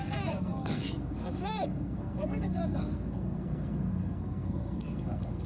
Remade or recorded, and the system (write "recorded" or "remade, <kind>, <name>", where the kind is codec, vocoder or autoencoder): remade, codec, SNAC